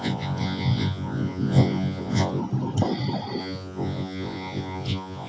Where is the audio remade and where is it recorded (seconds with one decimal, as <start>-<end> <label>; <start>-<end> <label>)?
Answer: 0.0-2.4 remade; 2.4-3.4 recorded; 3.4-5.3 remade